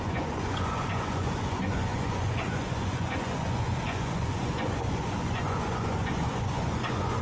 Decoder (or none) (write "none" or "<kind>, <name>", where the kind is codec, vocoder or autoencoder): vocoder, Vocos